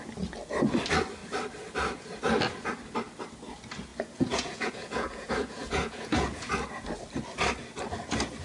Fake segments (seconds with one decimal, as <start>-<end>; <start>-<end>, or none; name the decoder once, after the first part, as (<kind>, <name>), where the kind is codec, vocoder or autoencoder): 3.9-6.5 (vocoder, Vocos)